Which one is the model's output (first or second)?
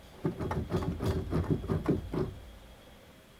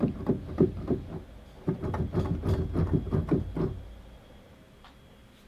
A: first